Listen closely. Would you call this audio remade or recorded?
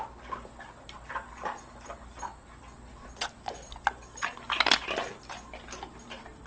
recorded